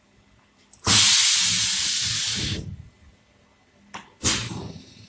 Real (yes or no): yes